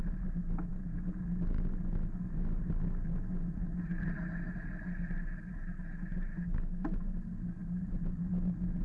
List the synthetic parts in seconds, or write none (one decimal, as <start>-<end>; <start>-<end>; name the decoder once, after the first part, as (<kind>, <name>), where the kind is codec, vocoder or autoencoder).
none